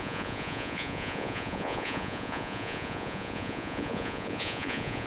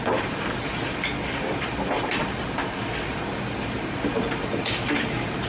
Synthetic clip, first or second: first